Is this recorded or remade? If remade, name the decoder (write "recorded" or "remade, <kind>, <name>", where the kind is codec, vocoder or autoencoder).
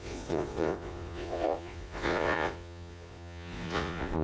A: remade, vocoder, Vocos